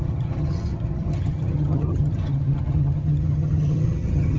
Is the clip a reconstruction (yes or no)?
yes